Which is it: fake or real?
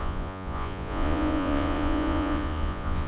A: fake